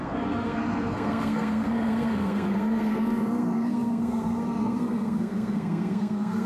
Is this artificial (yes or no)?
yes